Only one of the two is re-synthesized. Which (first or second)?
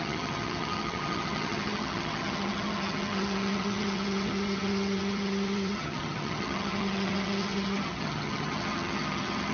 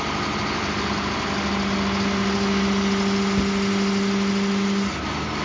first